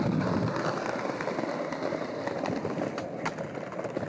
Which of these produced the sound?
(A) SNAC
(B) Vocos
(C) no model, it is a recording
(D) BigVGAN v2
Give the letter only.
C